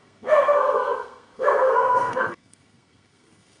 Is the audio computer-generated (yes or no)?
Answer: yes